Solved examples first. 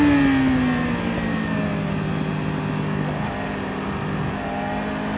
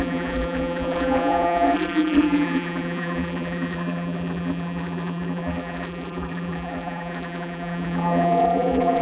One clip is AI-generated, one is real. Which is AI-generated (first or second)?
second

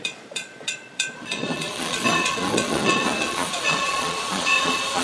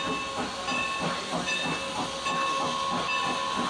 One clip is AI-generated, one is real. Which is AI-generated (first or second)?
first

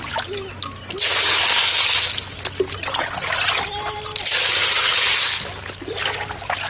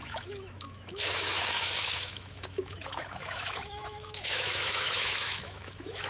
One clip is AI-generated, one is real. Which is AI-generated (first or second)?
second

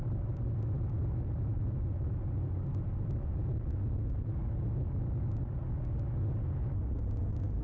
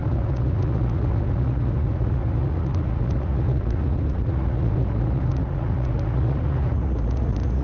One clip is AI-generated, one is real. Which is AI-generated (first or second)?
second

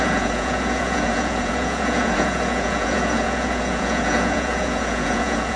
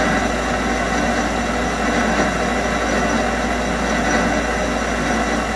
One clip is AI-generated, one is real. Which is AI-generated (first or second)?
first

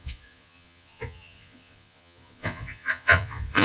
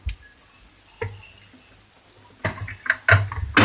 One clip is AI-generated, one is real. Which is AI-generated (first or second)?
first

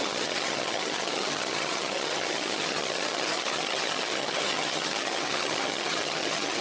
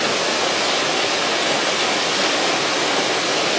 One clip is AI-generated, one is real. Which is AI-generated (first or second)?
first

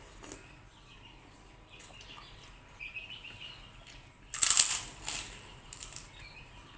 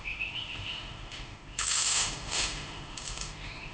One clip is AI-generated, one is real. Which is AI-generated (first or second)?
second